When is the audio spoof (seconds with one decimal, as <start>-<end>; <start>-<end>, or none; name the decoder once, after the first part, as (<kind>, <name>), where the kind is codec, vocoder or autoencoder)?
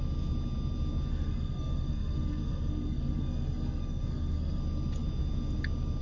1.1-4.6 (codec, SNAC)